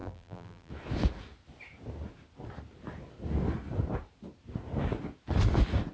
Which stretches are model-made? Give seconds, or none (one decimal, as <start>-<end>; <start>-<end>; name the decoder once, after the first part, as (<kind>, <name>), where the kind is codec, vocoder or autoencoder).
0.0-0.7 (vocoder, BigVGAN v2)